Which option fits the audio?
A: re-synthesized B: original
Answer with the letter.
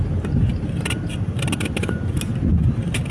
B